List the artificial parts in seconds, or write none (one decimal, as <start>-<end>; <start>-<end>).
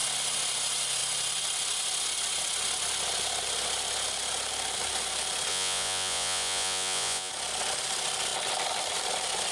5.5-7.3